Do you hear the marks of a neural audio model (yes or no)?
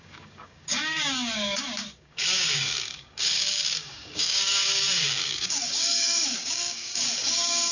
yes